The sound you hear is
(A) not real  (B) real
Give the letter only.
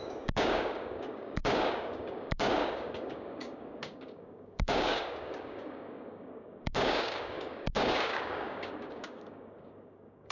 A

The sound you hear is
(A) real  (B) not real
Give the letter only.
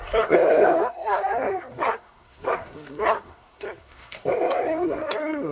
B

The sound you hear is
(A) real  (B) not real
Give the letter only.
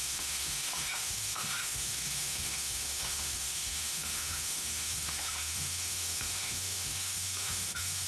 B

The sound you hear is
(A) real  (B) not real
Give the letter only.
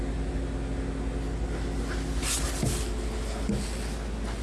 A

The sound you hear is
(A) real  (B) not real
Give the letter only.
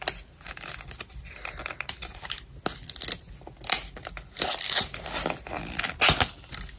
A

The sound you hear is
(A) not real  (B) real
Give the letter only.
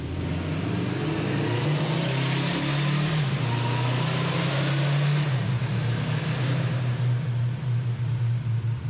B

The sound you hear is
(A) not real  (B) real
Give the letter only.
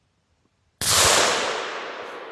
B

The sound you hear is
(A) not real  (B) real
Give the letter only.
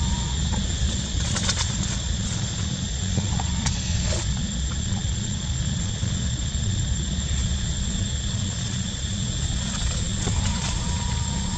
A